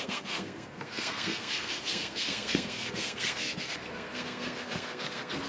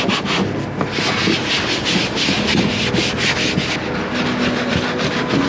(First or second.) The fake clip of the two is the first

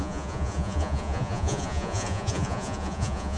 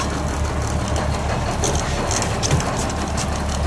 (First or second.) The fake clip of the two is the first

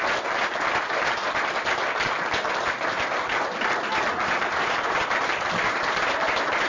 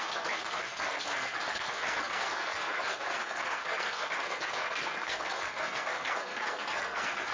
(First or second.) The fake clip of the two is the second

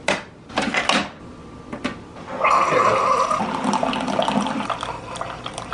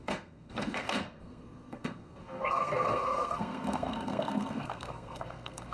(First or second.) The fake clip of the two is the second